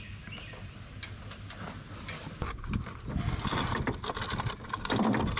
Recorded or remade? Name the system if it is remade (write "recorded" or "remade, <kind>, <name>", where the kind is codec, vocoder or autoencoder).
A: recorded